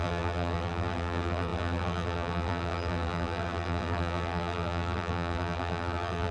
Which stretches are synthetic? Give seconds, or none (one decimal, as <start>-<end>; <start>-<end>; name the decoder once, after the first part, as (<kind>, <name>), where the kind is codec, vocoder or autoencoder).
0.0-6.3 (vocoder, BigVGAN v2)

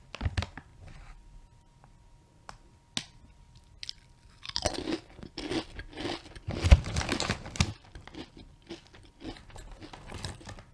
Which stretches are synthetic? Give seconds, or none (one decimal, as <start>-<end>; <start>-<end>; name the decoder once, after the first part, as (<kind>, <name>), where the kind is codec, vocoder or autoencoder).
none

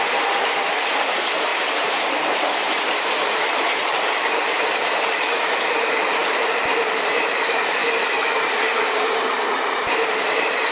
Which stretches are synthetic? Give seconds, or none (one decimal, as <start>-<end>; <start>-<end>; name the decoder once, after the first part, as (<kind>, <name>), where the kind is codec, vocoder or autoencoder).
0.0-7.8 (vocoder, BigVGAN v2); 8.9-10.7

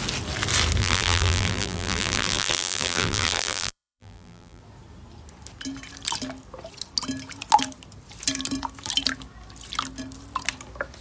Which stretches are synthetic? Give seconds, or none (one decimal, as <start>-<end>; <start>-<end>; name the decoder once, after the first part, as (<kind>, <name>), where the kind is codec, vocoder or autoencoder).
0.8-4.6 (vocoder, BigVGAN v2)

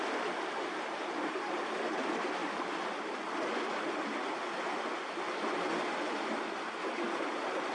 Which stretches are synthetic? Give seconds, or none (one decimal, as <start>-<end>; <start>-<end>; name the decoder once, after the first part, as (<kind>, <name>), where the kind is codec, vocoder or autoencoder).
none

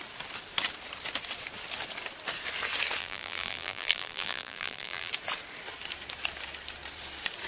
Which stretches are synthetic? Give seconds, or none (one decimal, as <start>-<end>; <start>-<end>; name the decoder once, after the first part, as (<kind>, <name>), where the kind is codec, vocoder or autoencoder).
3.0-5.1 (vocoder, BigVGAN v2)

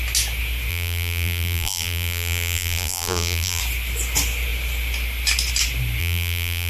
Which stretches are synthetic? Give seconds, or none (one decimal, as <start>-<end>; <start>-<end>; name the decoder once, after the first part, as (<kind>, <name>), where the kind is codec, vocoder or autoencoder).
0.7-3.6 (vocoder, BigVGAN v2); 6.0-6.7